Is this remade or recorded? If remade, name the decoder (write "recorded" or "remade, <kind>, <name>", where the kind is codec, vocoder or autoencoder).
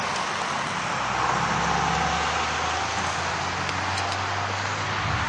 recorded